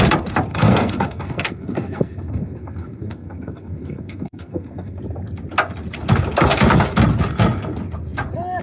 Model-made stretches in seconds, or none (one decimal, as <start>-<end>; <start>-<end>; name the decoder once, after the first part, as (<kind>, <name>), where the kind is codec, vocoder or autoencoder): 0.5-5.0 (codec, SNAC)